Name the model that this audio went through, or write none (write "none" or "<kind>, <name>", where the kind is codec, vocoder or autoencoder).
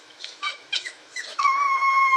autoencoder, DAC-VAE